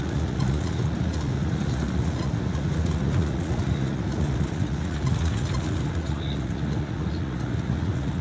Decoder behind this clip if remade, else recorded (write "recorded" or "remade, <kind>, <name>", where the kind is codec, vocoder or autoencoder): remade, vocoder, Vocos